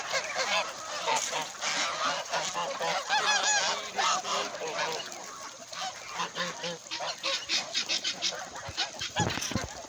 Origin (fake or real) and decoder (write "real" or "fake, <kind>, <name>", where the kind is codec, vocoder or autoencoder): real